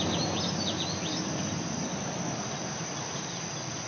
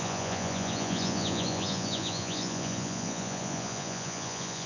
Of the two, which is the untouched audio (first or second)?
first